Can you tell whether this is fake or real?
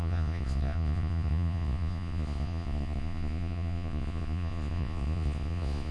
fake